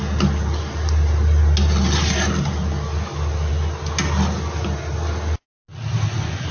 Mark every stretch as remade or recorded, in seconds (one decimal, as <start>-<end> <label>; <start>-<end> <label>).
0.0-6.5 recorded